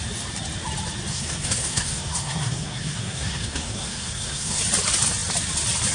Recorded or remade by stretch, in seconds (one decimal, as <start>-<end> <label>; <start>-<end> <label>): 0.0-1.1 recorded; 1.1-4.6 remade; 4.6-5.9 recorded